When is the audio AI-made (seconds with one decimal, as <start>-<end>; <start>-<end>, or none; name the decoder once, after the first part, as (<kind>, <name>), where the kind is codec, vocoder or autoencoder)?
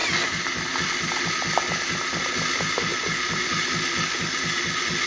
none